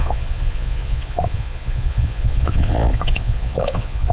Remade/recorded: remade